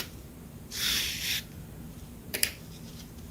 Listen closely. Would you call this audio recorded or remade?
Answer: remade